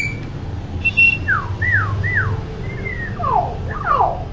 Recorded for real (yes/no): yes